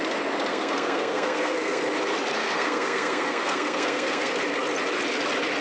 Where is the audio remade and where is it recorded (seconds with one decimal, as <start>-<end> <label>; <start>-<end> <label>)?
0.0-0.5 recorded; 0.5-1.8 remade; 1.8-2.4 recorded; 2.4-4.3 remade; 4.3-5.6 recorded